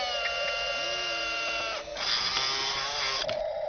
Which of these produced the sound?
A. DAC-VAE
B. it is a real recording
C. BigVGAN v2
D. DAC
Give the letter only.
B